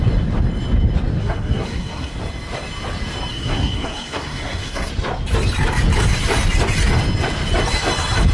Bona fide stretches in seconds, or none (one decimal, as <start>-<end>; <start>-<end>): 0.0-1.2; 2.1-3.3; 4.9-8.3